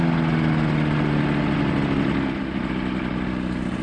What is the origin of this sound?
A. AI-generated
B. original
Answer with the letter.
B